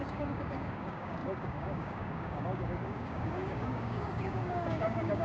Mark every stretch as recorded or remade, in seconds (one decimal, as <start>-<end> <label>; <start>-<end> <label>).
0.0-5.2 remade